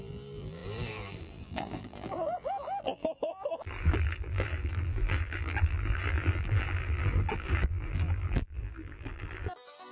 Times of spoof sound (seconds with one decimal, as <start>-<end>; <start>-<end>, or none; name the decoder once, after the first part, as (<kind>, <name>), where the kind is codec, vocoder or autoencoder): 0.0-9.9 (vocoder, BigVGAN v2)